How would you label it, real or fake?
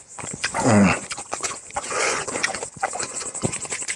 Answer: fake